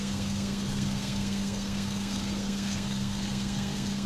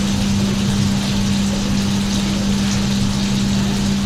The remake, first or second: first